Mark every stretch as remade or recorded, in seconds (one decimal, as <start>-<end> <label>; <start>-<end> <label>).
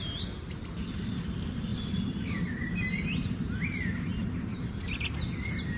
0.0-5.8 recorded